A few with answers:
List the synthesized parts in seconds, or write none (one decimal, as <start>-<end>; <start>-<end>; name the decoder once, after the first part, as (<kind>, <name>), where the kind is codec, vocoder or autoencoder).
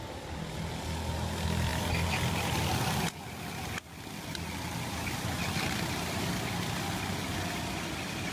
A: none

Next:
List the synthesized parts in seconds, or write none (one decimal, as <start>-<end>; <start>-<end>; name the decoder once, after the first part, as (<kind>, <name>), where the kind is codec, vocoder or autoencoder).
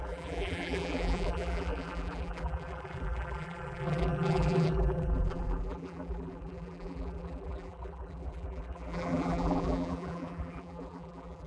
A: 0.0-11.5 (vocoder, BigVGAN v2)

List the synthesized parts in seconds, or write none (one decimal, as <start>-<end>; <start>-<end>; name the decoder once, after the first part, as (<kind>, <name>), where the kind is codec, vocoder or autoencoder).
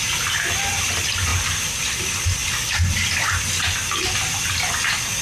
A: 1.3-1.8 (vocoder, BigVGAN v2); 2.4-4.7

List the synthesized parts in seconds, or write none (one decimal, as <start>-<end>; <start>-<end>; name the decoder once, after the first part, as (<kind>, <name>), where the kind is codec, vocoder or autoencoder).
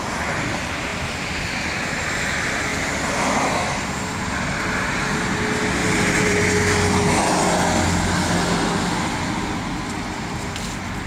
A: 5.8-6.4 (vocoder, BigVGAN v2)